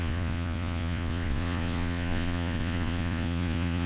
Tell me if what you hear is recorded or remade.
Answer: remade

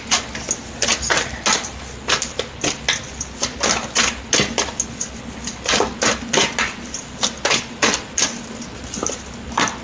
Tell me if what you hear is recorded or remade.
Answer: recorded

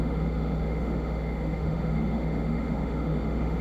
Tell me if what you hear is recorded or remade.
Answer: remade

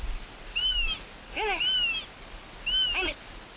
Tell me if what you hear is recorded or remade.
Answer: recorded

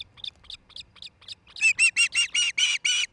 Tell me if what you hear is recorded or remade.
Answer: recorded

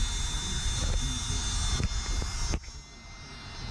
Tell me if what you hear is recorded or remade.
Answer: recorded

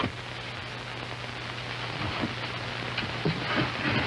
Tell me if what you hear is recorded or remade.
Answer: recorded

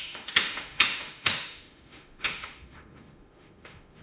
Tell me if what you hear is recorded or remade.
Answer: remade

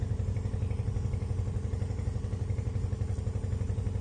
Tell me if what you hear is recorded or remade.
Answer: recorded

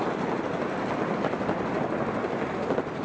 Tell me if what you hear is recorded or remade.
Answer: recorded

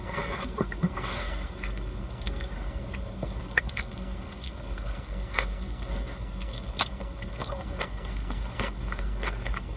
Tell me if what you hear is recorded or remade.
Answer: remade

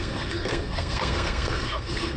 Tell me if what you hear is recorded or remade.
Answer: remade